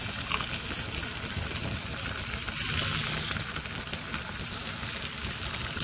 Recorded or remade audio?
recorded